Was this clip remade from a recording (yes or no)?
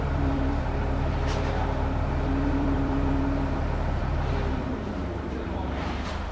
yes